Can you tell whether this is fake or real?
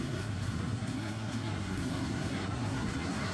fake